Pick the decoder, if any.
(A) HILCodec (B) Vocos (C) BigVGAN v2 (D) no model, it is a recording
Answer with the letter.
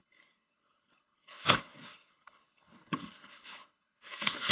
A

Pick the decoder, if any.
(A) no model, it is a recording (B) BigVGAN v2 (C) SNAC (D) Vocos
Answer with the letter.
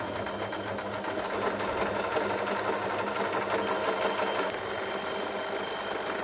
A